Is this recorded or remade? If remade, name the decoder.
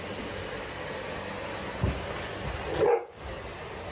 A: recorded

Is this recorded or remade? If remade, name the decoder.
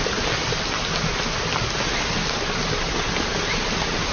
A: recorded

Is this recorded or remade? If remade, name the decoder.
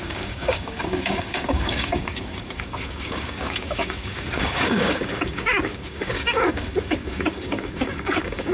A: remade, codec, DAC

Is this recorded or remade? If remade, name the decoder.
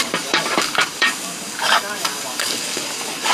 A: remade, codec, DAC